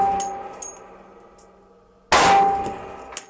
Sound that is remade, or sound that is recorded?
recorded